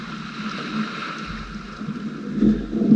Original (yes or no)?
yes